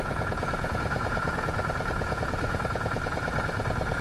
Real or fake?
fake